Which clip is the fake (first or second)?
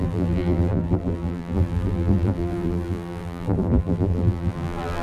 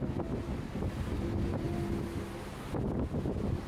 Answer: first